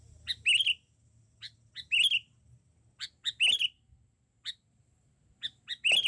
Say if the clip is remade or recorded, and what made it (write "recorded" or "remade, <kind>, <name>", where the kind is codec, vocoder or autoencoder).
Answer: recorded